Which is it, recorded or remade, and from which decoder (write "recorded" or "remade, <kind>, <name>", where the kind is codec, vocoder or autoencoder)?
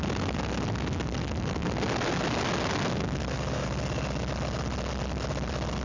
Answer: recorded